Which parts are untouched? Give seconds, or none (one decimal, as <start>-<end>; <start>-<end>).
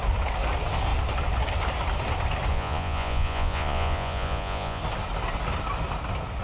0.0-2.5; 4.8-6.4